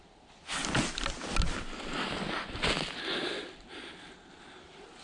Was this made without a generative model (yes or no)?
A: yes